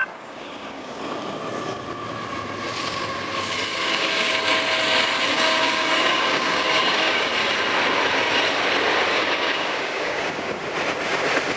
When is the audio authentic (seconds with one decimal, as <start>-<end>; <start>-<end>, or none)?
1.0-3.7; 4.3-5.3; 7.3-9.1; 10.6-11.6